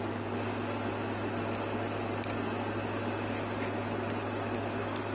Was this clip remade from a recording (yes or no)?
no